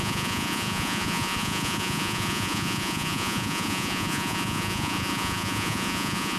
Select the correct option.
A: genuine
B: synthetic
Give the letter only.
B